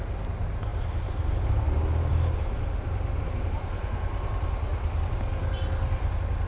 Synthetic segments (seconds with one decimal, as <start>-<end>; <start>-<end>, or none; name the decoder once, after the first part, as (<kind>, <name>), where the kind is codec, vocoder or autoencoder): none